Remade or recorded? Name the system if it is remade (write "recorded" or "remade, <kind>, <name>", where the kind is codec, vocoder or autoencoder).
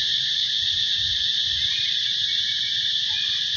remade, vocoder, BigVGAN v2